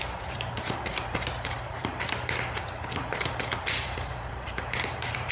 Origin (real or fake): fake